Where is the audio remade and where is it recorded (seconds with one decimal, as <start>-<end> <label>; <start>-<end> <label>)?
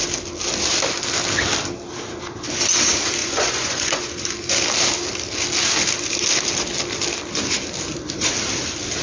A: 0.0-3.2 recorded; 3.2-4.0 remade; 4.0-9.0 recorded